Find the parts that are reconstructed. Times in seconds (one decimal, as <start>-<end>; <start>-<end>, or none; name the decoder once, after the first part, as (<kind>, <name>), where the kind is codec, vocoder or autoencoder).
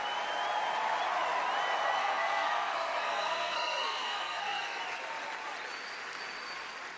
2.0-4.8 (codec, SNAC)